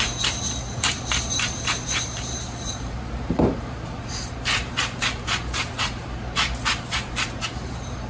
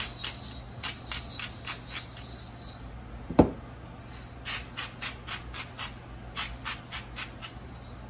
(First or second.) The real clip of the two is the second